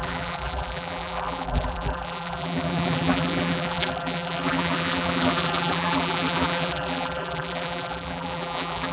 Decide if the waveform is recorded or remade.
remade